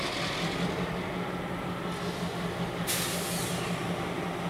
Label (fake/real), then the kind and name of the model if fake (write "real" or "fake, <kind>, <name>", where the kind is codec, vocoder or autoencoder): real